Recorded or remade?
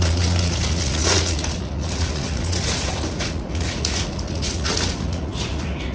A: remade